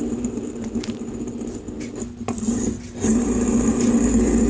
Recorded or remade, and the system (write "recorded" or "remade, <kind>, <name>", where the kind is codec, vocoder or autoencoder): recorded